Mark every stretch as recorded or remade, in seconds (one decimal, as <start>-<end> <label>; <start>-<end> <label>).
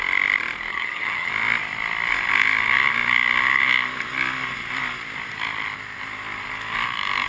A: 0.0-0.7 recorded; 0.7-1.3 remade; 1.3-7.3 recorded